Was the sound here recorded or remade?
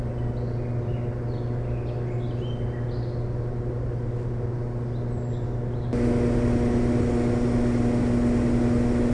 recorded